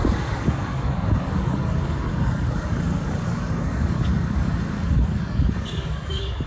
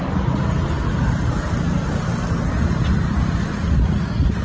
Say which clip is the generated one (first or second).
first